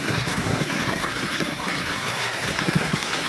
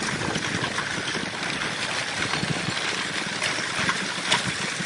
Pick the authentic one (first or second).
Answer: second